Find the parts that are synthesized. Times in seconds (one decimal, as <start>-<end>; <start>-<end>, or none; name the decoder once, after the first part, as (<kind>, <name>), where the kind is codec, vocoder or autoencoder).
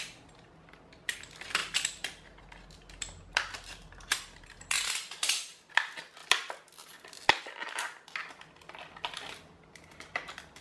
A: none